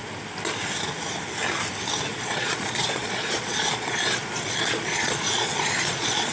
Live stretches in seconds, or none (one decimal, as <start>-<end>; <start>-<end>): 0.0-2.1